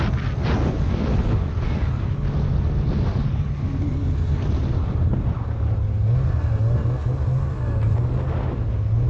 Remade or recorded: recorded